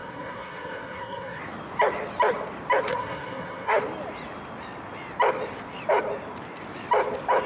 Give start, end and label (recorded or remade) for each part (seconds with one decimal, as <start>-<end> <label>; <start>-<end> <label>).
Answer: 0.0-1.4 remade; 1.4-2.9 recorded; 2.9-3.8 remade; 3.8-7.5 recorded